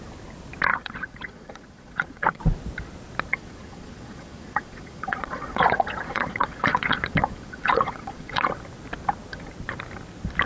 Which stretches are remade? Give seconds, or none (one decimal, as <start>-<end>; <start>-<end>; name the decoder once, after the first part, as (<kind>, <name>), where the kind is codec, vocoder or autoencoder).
0.7-2.4 (vocoder, Vocos); 3.3-8.5